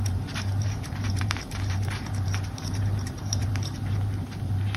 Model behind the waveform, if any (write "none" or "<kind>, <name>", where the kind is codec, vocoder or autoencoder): vocoder, BigVGAN v2